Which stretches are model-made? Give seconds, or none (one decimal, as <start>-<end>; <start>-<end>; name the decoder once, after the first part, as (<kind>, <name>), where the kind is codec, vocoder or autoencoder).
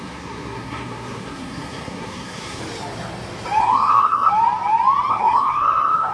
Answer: 0.0-2.6 (codec, SNAC); 3.6-4.3; 5.1-6.1